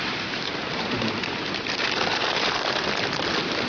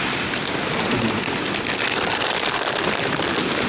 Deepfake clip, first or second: first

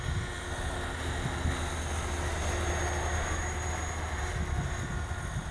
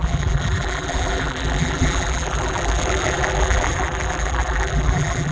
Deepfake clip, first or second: second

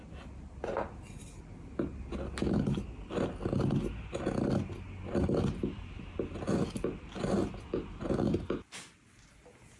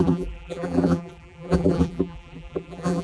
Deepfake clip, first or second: second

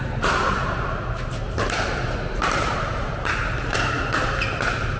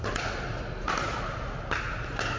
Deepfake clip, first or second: first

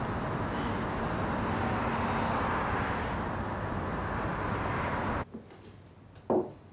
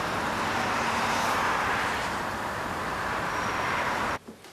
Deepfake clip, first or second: second